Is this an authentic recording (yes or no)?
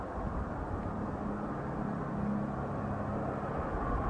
yes